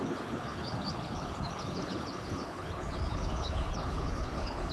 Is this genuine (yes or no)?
no